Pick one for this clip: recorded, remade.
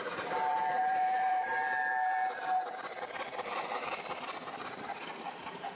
remade